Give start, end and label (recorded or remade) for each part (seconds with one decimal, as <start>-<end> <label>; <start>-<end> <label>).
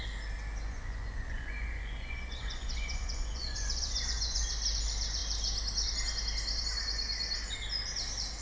0.0-0.6 recorded; 0.6-4.5 remade; 4.5-8.4 recorded